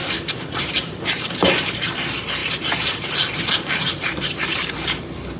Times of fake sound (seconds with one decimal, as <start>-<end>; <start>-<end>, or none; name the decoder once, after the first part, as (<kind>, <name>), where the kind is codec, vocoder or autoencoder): 0.0-1.3 (vocoder, BigVGAN v2); 2.4-5.0